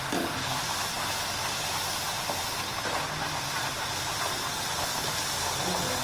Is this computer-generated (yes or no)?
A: no